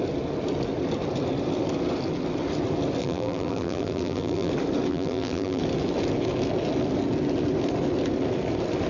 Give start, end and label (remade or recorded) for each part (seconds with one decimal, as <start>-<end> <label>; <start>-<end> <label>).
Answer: 0.0-3.0 recorded; 3.0-4.5 remade; 4.5-4.9 recorded; 4.9-5.6 remade; 5.6-8.9 recorded